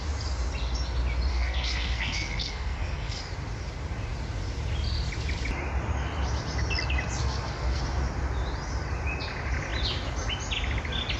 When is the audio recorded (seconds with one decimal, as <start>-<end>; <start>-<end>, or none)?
0.0-1.3; 3.2-7.2; 7.8-11.2